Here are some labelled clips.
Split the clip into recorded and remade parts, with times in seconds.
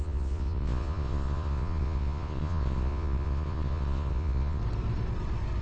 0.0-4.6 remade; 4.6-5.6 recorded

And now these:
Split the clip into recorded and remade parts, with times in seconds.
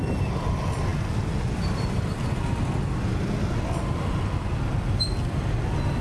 0.0-6.0 recorded